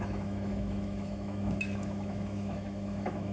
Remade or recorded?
remade